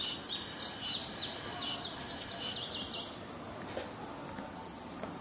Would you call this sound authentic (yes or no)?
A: yes